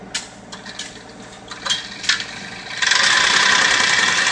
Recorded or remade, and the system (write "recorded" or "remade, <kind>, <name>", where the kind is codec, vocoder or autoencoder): recorded